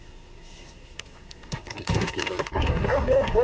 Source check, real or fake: fake